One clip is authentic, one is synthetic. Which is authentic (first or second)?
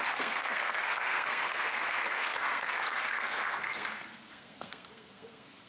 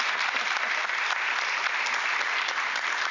second